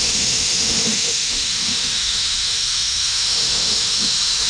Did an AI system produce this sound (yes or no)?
yes